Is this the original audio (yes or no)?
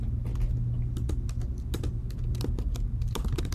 yes